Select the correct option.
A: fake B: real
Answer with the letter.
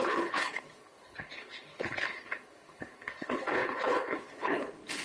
A